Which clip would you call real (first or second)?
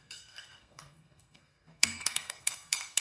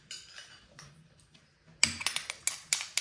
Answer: second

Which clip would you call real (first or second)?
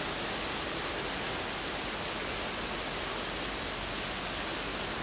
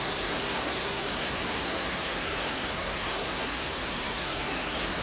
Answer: first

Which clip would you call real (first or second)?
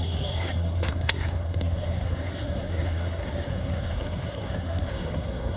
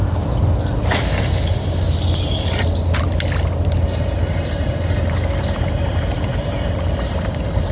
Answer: second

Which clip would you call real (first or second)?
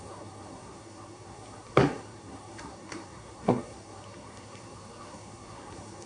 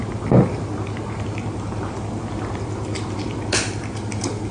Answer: second